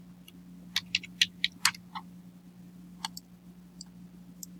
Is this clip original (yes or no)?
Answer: yes